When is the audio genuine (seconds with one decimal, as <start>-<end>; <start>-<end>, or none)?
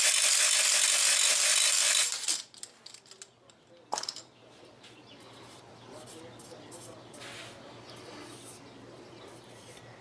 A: 0.0-10.0